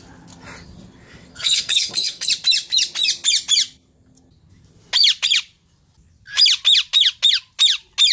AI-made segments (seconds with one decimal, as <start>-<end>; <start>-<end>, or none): 1.3-2.3